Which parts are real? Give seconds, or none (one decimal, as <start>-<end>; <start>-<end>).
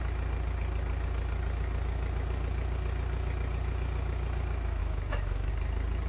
0.0-4.8; 5.5-6.1